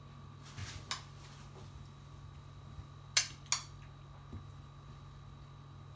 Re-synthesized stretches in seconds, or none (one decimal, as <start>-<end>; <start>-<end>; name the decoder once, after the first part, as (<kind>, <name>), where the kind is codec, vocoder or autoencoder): none

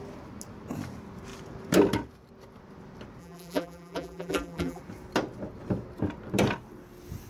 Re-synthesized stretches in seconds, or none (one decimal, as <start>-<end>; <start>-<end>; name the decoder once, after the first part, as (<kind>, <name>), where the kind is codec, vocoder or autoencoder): 3.2-4.8 (vocoder, BigVGAN v2)

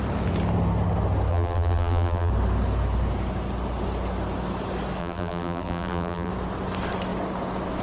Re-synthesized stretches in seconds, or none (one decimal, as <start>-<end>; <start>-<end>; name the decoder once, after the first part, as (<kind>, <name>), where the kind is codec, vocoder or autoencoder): 1.3-2.3 (vocoder, BigVGAN v2); 5.0-6.3